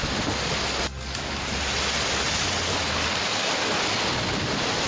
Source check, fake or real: real